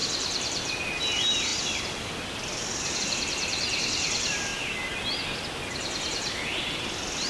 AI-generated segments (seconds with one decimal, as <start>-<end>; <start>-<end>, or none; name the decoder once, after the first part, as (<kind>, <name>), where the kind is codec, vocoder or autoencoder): 0.0-4.5 (vocoder, BigVGAN v2); 5.7-7.3